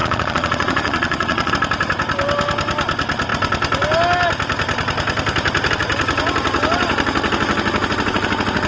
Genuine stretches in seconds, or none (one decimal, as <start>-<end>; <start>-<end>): 1.5-8.7